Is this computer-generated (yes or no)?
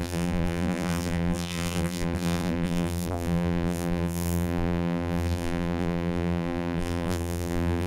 yes